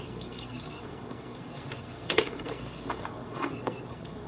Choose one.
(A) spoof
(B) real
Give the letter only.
A